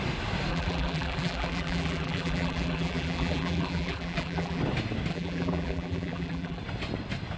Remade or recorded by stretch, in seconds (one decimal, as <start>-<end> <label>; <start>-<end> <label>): 0.0-0.5 recorded; 0.5-4.6 remade; 4.6-5.1 recorded; 5.1-6.6 remade; 6.6-7.4 recorded